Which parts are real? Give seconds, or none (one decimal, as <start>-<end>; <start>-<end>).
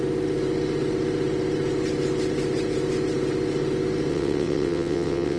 0.0-4.1